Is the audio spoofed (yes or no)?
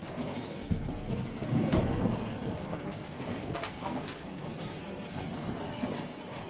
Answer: yes